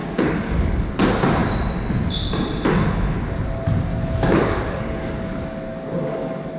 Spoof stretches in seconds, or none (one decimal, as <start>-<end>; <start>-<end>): 0.0-0.9; 3.9-6.6